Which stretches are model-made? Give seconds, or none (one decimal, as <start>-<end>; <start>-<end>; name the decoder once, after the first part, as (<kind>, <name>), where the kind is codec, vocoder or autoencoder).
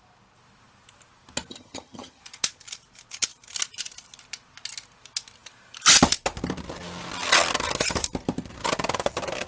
1.5-2.2 (vocoder, HiFi-GAN)